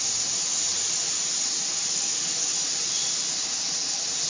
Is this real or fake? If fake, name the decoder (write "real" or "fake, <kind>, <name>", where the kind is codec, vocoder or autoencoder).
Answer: real